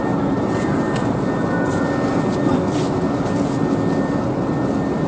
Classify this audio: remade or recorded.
recorded